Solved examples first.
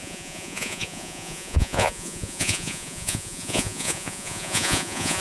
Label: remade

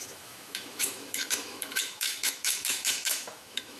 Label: remade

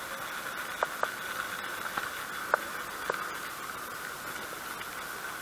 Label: recorded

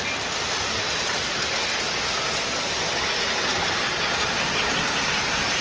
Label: recorded